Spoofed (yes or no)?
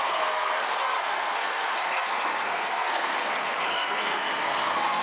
yes